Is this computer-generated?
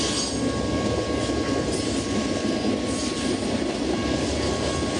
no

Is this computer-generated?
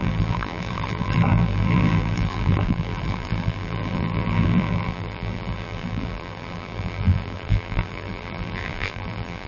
yes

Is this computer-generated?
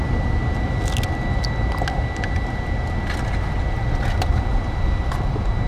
no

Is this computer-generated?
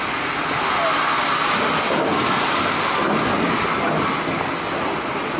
no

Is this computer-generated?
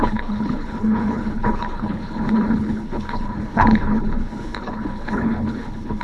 yes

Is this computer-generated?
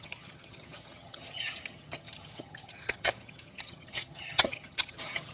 yes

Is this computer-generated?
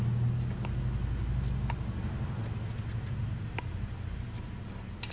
no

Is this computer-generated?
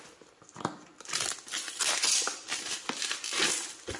no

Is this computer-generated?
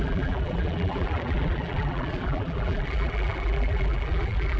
yes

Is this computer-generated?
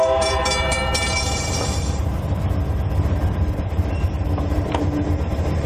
yes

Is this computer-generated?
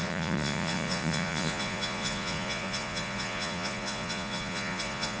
yes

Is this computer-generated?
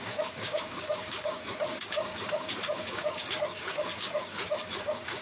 yes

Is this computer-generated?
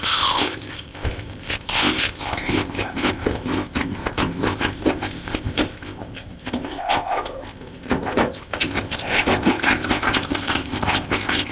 yes